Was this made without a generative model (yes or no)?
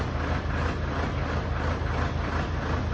yes